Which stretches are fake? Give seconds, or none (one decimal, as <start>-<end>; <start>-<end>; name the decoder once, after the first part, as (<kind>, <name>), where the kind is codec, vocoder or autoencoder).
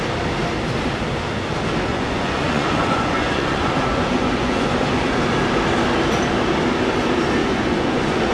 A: 1.9-5.1 (vocoder, Vocos); 7.4-8.3